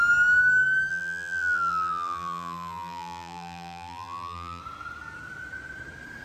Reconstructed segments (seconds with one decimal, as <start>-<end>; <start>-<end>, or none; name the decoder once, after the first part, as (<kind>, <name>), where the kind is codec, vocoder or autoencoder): 0.9-4.6 (vocoder, BigVGAN v2)